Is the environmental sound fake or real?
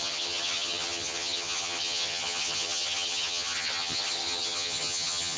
fake